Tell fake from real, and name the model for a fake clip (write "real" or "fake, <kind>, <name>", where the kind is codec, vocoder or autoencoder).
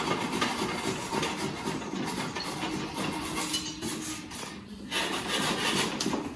real